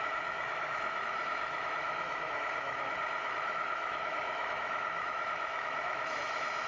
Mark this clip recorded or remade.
remade